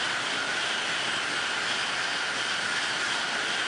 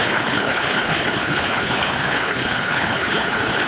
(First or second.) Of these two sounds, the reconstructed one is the second